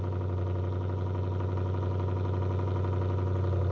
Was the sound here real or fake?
real